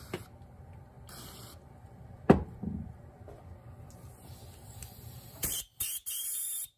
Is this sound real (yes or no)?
yes